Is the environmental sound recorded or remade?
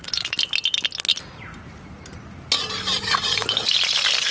recorded